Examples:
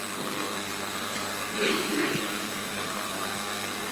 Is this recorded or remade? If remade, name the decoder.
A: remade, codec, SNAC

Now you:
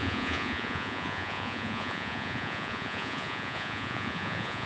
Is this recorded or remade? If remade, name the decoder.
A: remade, vocoder, Vocos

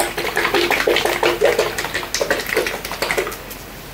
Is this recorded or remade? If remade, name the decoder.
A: recorded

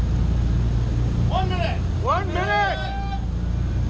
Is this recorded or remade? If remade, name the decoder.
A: recorded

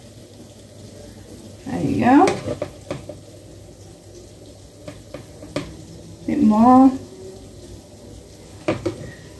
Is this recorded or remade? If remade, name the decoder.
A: recorded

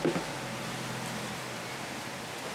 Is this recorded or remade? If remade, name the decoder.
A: recorded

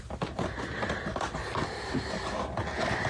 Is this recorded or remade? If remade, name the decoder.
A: recorded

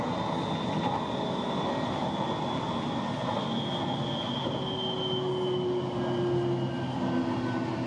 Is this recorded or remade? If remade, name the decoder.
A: recorded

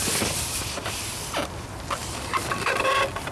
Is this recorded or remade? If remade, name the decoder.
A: remade, vocoder, BigVGAN v2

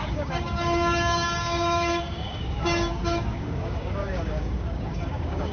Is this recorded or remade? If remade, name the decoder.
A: remade, codec, DAC